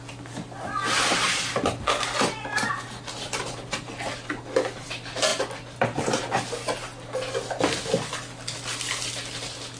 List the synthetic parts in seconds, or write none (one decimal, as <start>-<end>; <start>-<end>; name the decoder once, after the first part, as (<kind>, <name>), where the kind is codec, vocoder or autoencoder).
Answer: none